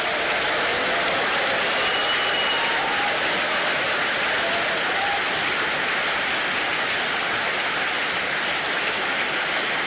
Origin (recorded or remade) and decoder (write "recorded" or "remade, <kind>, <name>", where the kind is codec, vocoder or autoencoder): recorded